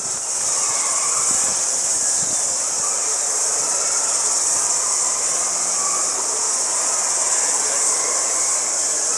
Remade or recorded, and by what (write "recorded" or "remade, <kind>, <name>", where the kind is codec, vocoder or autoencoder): recorded